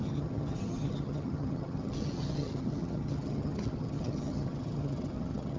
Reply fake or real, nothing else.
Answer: fake